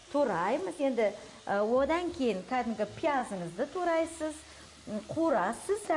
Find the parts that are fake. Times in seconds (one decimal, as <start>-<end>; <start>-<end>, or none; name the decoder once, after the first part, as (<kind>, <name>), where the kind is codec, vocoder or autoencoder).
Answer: none